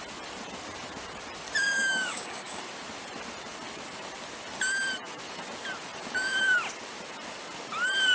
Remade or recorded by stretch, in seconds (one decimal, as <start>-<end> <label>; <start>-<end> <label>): 0.0-1.6 recorded; 1.6-2.6 remade; 2.6-8.1 recorded